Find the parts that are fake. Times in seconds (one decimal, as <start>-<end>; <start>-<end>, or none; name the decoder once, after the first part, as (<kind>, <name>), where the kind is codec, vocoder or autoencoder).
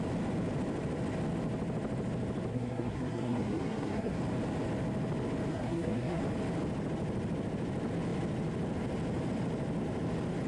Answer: 2.5-4.2 (codec, SNAC); 5.5-6.2